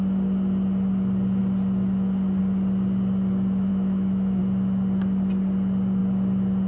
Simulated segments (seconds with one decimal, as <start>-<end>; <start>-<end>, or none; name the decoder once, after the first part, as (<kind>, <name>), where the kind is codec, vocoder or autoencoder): 3.7-4.4 (autoencoder, DAC-VAE)